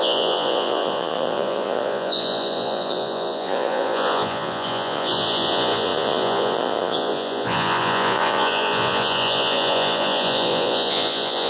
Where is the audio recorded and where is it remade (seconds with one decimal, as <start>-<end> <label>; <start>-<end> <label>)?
0.0-11.5 remade

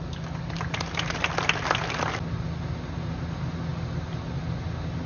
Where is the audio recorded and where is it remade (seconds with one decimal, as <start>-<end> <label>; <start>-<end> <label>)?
0.0-5.1 recorded

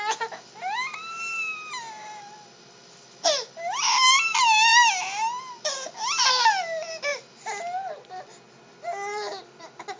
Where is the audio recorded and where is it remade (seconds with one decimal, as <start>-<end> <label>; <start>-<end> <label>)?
0.0-10.0 recorded